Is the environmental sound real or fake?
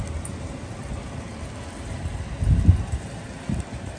real